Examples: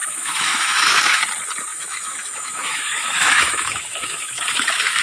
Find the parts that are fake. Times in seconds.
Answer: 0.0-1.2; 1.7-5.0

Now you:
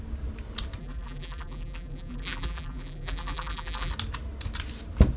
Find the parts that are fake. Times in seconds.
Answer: 0.8-3.9

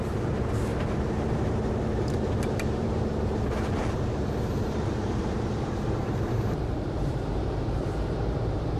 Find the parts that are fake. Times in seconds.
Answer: 0.0-8.8

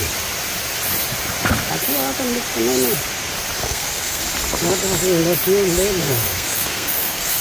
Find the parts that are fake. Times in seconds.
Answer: 3.6-4.2; 6.0-7.4

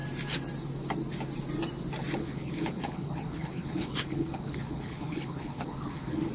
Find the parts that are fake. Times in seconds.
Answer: 2.2-6.3